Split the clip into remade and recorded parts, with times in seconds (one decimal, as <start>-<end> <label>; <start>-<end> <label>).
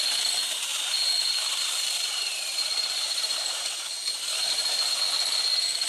0.0-0.7 recorded; 0.7-3.6 remade; 3.6-5.9 recorded